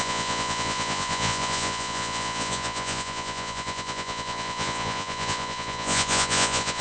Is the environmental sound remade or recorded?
remade